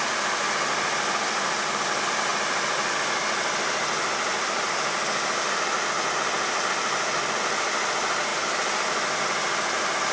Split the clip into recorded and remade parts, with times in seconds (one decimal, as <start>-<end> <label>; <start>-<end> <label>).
0.0-10.1 recorded